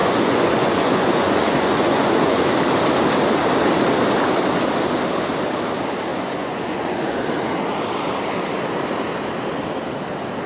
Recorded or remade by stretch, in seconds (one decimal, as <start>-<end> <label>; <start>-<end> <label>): 0.0-2.4 remade; 2.4-6.1 recorded; 6.1-7.2 remade; 7.2-10.5 recorded